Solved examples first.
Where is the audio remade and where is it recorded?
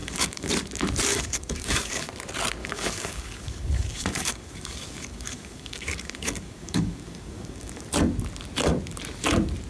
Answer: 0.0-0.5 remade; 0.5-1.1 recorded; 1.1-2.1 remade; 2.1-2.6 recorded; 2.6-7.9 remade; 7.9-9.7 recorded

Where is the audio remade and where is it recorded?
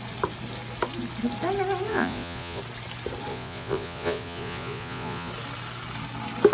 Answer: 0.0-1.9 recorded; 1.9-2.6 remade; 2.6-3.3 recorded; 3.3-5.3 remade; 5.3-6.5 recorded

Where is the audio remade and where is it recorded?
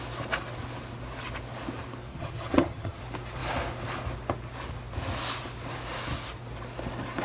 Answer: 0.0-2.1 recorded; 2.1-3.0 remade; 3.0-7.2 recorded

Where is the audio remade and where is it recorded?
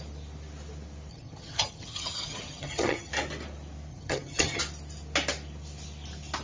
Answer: 0.0-1.1 recorded; 1.1-3.1 remade; 3.1-3.9 recorded; 3.9-4.6 remade; 4.6-6.4 recorded